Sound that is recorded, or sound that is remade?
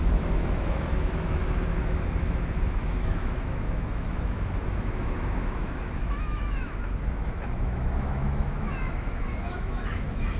remade